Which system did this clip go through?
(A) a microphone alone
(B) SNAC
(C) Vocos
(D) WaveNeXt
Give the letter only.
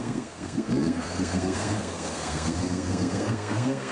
B